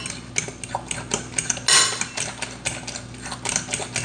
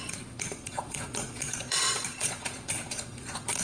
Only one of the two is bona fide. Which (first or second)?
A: first